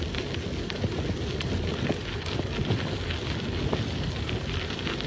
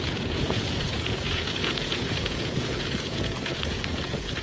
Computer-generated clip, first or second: second